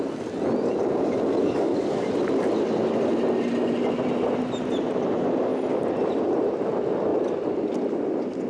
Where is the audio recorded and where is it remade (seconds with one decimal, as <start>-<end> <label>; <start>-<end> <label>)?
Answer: 0.0-1.4 recorded; 1.4-2.1 remade; 2.1-8.5 recorded